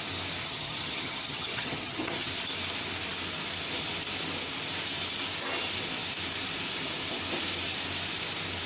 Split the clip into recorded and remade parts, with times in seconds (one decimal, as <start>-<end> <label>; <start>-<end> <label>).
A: 0.0-0.4 recorded; 0.4-2.3 remade; 2.3-8.7 recorded